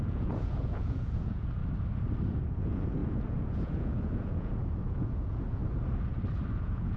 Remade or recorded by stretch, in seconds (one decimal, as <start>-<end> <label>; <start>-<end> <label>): 0.0-1.6 remade; 1.6-2.5 recorded; 2.5-5.6 remade; 5.6-6.5 recorded; 6.5-7.0 remade